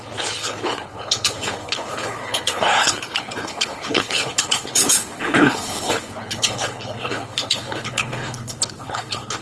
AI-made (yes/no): yes